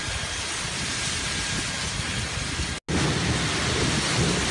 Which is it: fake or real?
real